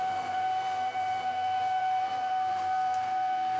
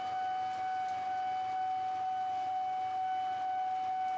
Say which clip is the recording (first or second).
second